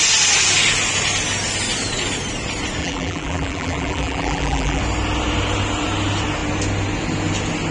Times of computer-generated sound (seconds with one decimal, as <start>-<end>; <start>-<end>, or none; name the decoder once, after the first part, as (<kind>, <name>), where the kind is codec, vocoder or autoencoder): 2.8-4.8 (vocoder, BigVGAN v2)